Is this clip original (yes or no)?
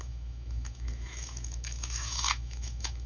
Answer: no